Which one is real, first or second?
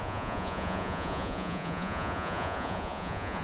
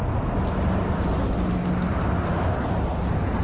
second